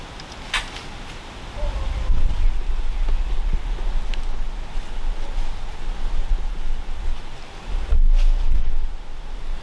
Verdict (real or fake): real